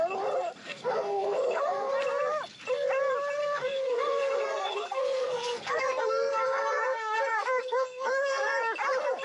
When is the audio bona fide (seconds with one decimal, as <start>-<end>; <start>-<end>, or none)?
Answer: 0.0-0.6; 1.9-3.4; 8.6-9.2